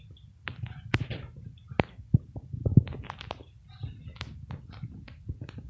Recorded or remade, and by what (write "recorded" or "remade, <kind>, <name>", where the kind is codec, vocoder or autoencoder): recorded